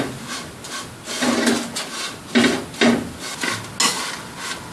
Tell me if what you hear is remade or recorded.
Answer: recorded